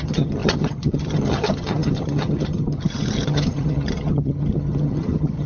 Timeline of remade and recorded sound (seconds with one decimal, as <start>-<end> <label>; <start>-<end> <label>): 0.0-5.5 remade